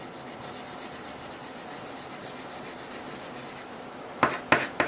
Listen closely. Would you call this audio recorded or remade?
recorded